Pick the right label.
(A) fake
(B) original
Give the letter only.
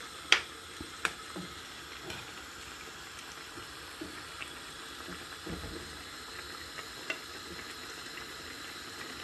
B